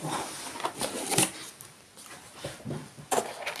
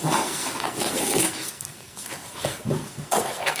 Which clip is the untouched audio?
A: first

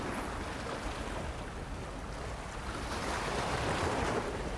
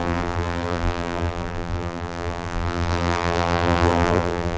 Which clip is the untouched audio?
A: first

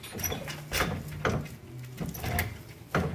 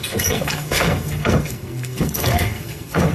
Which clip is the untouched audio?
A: first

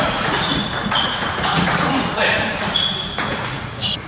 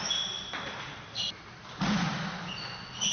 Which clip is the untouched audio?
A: second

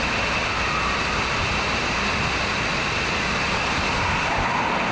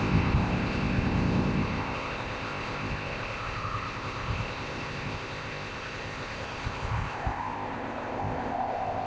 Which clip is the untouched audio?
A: first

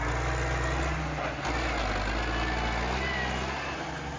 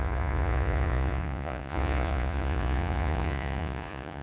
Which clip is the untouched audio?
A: first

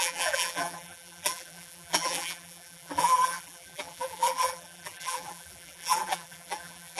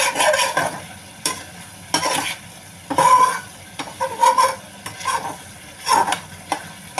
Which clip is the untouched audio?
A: second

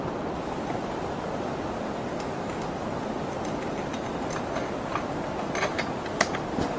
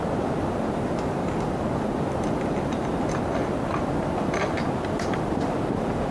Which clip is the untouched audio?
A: first